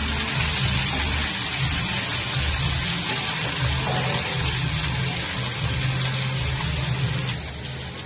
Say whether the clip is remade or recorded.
recorded